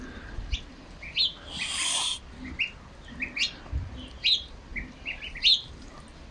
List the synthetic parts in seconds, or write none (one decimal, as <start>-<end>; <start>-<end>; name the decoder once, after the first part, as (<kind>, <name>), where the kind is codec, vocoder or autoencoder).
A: none